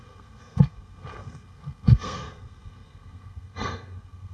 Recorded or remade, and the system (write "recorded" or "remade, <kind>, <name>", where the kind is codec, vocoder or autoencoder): remade, codec, SNAC